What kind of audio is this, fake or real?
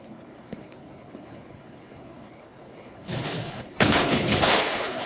fake